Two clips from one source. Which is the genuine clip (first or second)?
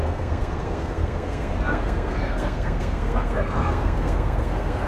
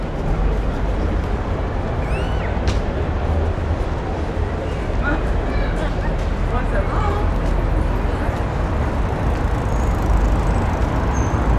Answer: second